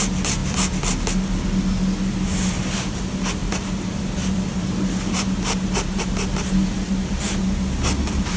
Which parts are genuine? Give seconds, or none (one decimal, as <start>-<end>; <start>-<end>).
0.0-8.4